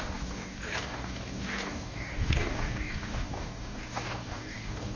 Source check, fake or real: fake